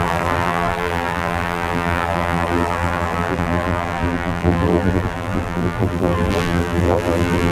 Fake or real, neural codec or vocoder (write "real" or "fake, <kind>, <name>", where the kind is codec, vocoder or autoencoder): fake, vocoder, BigVGAN v2